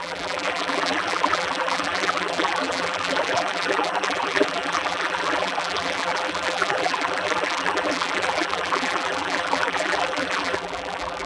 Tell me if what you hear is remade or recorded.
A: remade